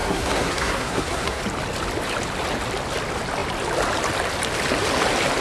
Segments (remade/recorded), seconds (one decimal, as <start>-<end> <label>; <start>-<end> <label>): 0.0-1.4 remade; 1.4-5.4 recorded